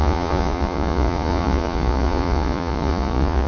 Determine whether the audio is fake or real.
fake